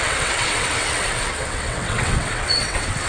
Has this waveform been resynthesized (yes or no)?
yes